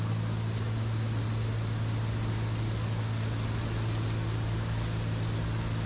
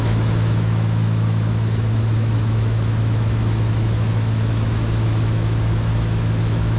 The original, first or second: first